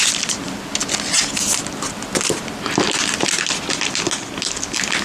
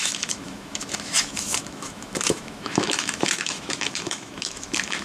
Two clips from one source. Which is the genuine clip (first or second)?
first